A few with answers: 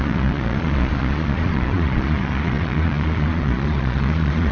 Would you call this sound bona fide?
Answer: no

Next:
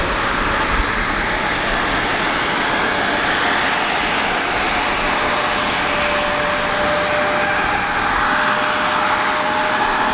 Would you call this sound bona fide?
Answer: yes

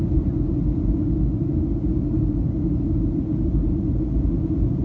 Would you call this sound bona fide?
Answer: yes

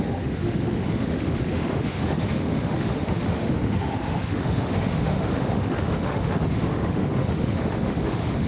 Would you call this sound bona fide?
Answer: no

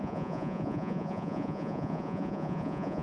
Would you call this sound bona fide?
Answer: no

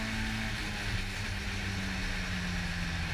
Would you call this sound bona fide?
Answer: yes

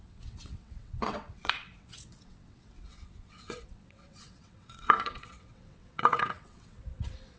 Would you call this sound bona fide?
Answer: no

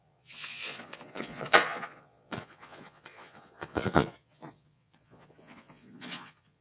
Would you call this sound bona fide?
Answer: no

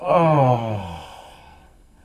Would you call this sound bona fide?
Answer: no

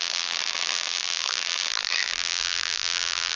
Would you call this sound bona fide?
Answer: no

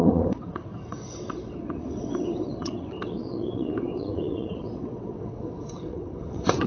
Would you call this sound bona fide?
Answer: no